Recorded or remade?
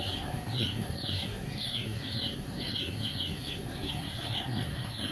remade